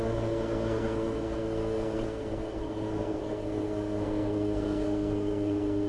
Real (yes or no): no